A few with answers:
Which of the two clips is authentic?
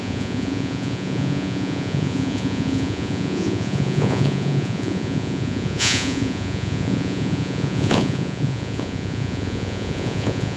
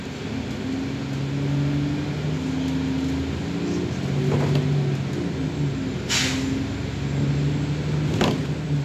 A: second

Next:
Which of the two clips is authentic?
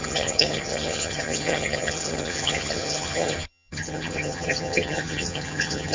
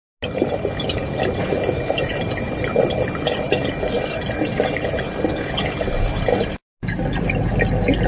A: second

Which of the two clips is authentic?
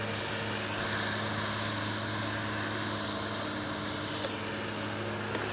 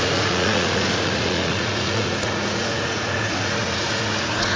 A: first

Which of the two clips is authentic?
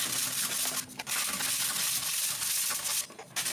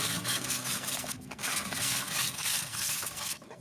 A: first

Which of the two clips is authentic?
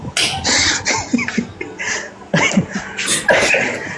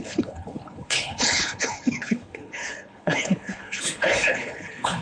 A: first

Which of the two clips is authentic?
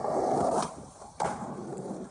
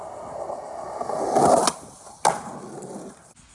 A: second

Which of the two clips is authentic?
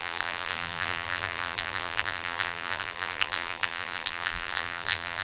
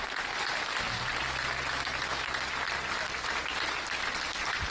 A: second